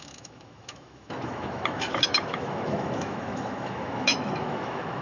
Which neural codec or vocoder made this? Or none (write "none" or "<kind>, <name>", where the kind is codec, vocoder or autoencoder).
autoencoder, DAC-VAE